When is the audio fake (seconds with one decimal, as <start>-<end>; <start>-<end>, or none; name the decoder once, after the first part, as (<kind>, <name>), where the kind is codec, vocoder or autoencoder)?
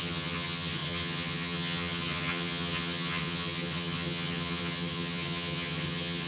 0.0-6.3 (vocoder, HiFi-GAN)